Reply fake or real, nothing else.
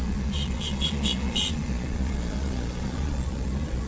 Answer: fake